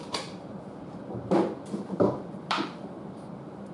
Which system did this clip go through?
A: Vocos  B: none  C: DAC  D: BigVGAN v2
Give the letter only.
D